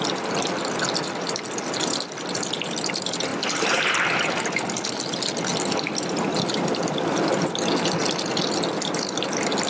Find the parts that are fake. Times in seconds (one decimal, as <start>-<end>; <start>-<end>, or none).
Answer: none